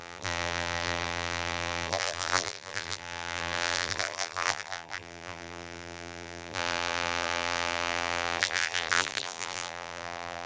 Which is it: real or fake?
fake